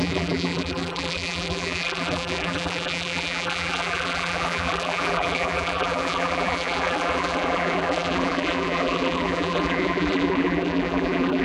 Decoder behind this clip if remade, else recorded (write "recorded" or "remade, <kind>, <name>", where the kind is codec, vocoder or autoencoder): remade, vocoder, BigVGAN v2